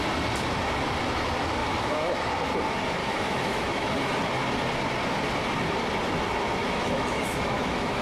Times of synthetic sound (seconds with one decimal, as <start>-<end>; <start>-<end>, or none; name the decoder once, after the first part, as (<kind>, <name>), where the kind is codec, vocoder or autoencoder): 1.6-2.1 (autoencoder, DAC-VAE); 3.0-3.9; 6.6-8.0